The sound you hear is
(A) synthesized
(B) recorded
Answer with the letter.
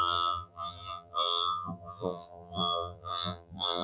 A